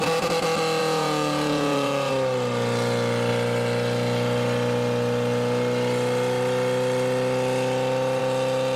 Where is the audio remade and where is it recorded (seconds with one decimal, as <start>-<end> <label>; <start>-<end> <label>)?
0.0-0.8 recorded; 0.8-2.1 remade; 2.1-8.8 recorded